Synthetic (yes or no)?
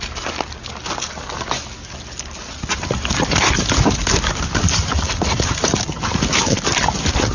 no